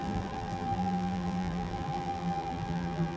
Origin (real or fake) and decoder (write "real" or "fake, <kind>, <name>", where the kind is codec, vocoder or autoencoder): fake, vocoder, BigVGAN v2